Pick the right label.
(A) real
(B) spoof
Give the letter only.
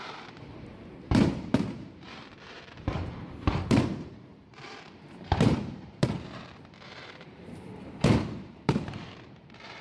B